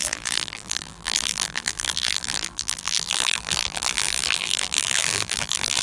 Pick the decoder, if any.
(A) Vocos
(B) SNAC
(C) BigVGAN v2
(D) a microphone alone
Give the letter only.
C